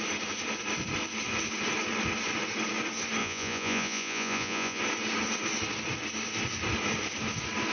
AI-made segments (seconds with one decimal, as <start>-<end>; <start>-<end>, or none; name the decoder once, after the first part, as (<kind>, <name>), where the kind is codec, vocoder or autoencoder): 3.2-4.8 (vocoder, Vocos)